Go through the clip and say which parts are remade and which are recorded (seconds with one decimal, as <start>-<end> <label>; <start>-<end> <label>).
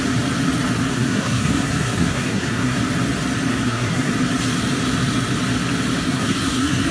0.0-0.9 recorded; 0.9-2.8 remade; 2.8-3.5 recorded; 3.5-4.1 remade; 4.1-6.0 recorded; 6.0-6.9 remade